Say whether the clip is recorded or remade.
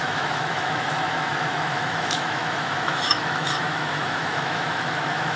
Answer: remade